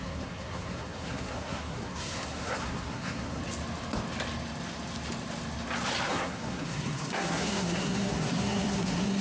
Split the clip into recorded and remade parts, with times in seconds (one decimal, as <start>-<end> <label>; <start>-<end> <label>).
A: 0.0-3.4 remade; 3.4-6.1 recorded; 6.1-9.2 remade